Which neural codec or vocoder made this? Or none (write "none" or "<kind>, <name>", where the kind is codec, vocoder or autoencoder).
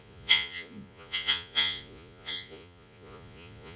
vocoder, Vocos